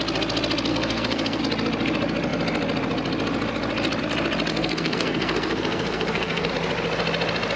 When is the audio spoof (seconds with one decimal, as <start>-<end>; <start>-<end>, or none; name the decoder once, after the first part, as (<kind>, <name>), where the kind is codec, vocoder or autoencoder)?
0.7-1.4 (codec, SNAC); 4.5-6.5